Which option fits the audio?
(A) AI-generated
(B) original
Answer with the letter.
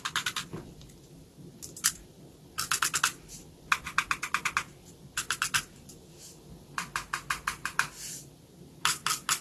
B